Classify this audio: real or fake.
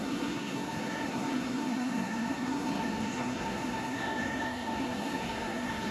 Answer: fake